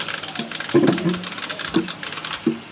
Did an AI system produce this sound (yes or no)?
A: no